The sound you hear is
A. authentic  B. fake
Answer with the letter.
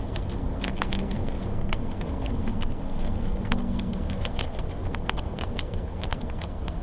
B